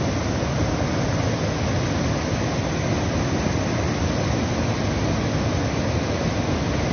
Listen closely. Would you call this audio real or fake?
real